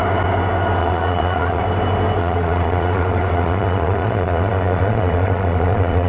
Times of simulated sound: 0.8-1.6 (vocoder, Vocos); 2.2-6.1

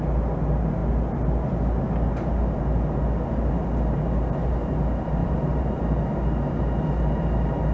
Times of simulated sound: 5.2-5.8 (vocoder, BigVGAN v2)

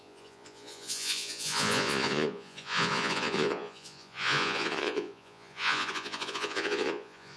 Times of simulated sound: 0.0-7.4 (vocoder, Vocos)